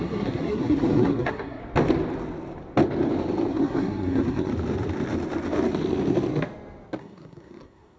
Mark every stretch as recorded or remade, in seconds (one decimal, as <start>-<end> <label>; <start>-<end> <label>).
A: 0.0-1.6 remade; 1.6-3.5 recorded; 3.5-4.5 remade; 4.5-7.0 recorded; 7.0-8.0 remade